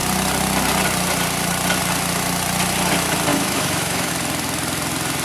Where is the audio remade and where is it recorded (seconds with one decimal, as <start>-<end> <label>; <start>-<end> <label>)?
0.0-3.3 recorded; 3.3-4.1 remade; 4.1-5.2 recorded